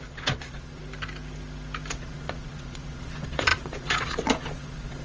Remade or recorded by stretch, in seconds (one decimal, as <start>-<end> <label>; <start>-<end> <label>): 0.0-0.8 remade; 0.8-1.9 recorded; 1.9-5.0 remade